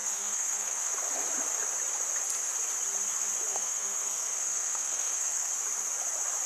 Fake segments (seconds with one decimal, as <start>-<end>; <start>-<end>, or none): 0.0-0.9; 3.5-5.5